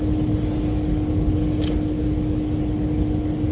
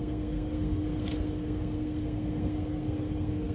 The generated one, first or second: second